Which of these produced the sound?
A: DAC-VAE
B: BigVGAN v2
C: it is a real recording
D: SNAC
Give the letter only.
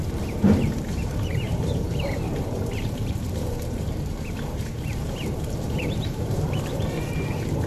B